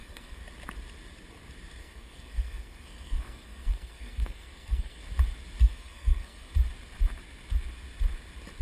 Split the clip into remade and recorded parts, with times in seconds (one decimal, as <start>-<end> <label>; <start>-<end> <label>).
0.0-0.4 remade; 0.4-1.8 recorded; 1.8-5.0 remade; 5.0-5.6 recorded; 5.6-6.5 remade; 6.5-8.6 recorded